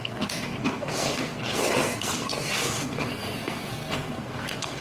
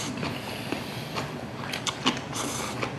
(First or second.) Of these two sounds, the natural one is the second